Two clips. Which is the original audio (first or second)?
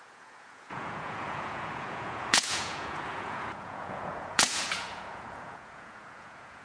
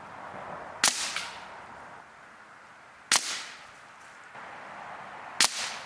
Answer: second